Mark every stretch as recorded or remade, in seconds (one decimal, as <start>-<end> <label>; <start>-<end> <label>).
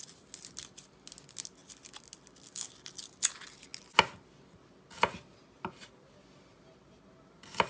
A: 0.0-7.7 recorded